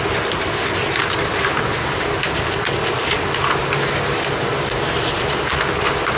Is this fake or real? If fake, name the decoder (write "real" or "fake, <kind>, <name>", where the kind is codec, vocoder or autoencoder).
real